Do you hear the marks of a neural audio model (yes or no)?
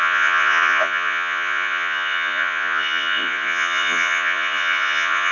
yes